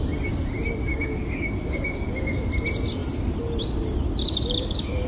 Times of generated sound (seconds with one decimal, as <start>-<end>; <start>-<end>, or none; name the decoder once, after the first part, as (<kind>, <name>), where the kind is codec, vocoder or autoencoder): 0.9-2.4 (codec, DAC)